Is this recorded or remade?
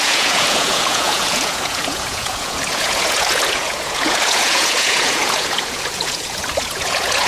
remade